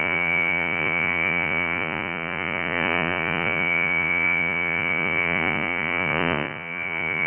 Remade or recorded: remade